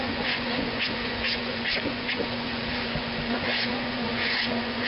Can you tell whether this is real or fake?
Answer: fake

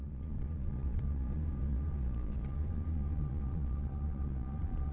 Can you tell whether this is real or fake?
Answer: fake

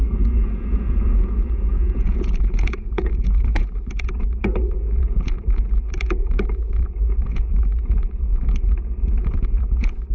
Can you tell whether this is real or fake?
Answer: fake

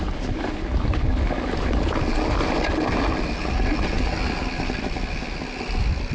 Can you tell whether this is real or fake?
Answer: real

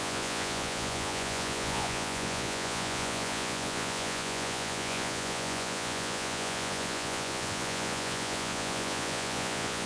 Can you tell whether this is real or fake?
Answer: fake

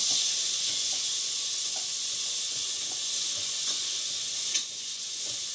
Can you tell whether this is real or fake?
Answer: fake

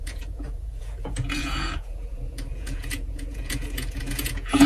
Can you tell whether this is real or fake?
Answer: fake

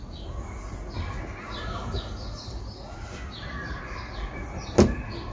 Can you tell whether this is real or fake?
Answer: real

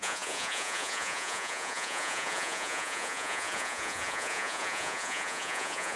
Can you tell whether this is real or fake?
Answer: fake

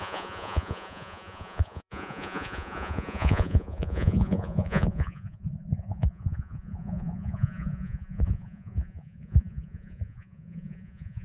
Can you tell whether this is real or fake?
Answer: fake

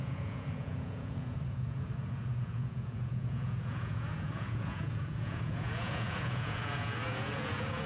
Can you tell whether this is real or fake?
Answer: fake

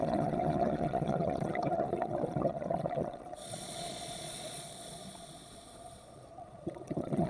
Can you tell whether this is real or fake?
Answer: fake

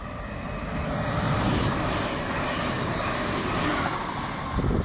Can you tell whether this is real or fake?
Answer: real